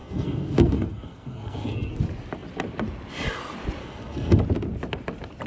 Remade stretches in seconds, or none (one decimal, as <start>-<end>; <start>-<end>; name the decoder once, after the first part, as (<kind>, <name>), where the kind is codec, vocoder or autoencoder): 0.0-2.0 (codec, SNAC); 3.8-4.4